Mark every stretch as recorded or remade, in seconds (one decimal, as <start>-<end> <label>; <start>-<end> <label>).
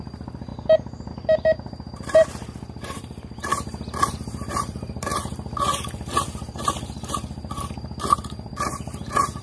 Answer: 0.0-0.5 remade; 0.5-1.1 recorded; 1.1-9.4 remade